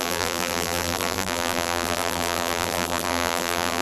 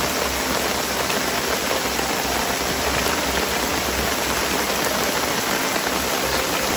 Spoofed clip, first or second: first